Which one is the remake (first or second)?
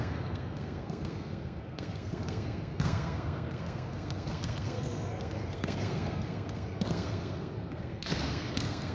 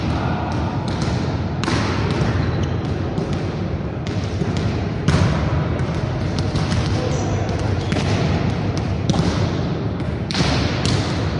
first